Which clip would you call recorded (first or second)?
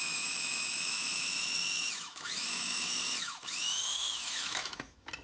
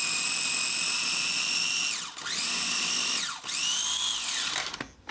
second